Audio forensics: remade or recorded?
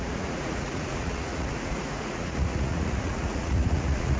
remade